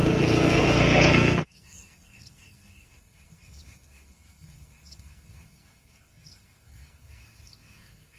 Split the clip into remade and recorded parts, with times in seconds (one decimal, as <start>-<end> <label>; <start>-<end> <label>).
0.0-8.2 remade